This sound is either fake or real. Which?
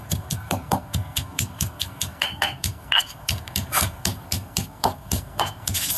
fake